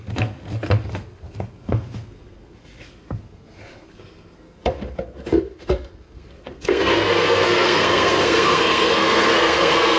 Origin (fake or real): fake